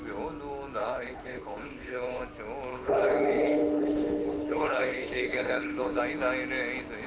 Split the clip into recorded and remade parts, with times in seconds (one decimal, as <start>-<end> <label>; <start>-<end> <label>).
0.0-0.8 recorded; 0.8-2.2 remade; 2.2-2.7 recorded; 2.7-6.0 remade; 6.0-7.1 recorded